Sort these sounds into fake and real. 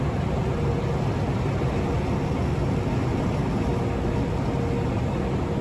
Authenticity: real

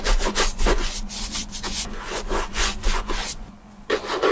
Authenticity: fake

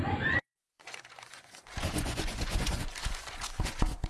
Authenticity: fake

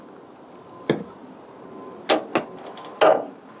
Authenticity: real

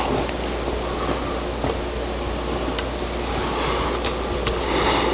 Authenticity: real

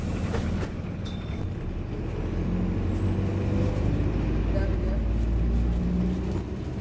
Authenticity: real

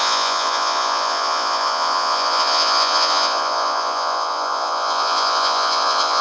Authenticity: fake